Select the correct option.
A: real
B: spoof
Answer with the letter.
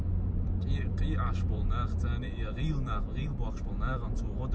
B